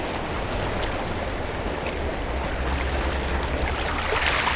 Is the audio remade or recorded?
recorded